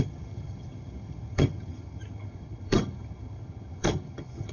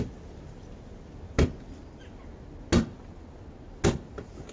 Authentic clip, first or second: second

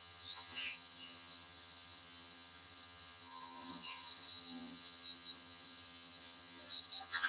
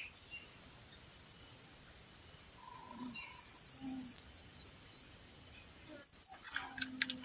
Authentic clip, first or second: second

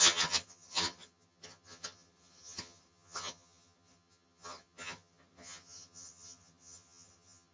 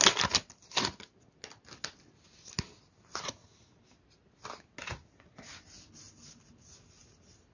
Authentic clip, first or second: second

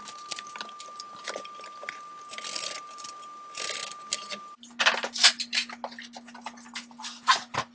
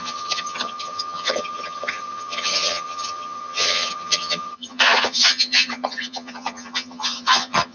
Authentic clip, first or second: first